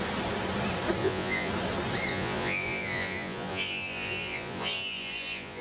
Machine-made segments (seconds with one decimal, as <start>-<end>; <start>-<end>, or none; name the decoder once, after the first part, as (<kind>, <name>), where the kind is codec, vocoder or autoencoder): 1.0-1.5 (vocoder, Vocos); 2.1-5.6